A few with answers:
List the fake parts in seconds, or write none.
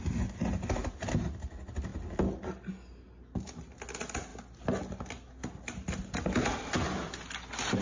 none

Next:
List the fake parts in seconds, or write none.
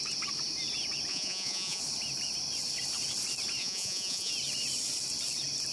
1.1-1.8; 3.6-4.3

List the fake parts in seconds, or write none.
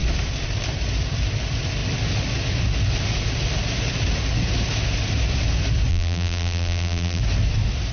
5.9-7.2